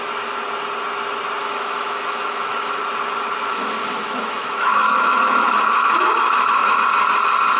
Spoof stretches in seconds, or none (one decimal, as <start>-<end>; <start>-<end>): 1.4-2.8; 3.5-6.8